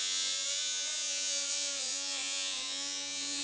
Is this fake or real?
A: fake